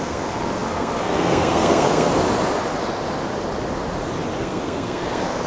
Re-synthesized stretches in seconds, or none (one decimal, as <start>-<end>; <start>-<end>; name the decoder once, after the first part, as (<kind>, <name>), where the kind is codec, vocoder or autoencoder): 0.0-2.1 (codec, SNAC); 4.4-5.5